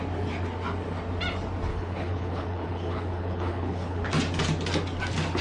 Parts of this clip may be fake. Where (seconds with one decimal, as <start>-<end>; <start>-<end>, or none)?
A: 1.7-4.0